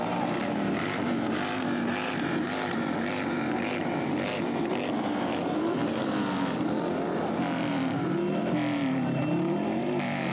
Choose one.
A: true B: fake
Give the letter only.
B